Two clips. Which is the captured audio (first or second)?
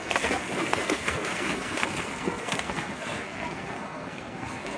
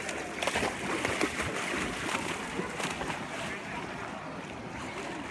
second